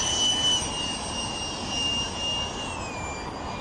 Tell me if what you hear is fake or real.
real